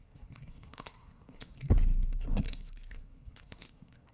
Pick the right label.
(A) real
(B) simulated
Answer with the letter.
B